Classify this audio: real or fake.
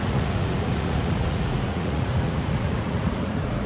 fake